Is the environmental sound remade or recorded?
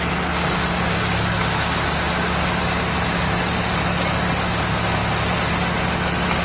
recorded